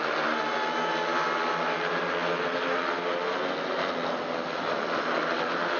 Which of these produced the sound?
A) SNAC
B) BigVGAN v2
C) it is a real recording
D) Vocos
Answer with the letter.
C